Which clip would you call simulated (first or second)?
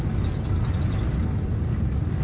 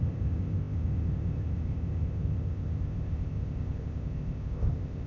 second